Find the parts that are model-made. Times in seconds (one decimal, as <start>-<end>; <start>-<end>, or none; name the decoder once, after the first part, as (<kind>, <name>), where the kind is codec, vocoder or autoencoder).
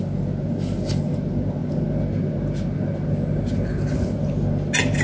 none